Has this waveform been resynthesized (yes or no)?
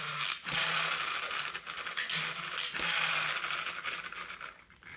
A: no